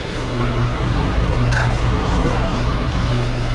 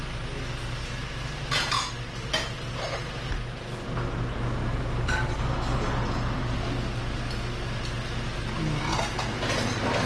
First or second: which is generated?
first